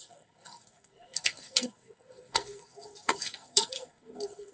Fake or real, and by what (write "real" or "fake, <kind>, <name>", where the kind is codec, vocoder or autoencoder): fake, codec, SNAC